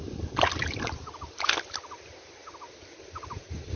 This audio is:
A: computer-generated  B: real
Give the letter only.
B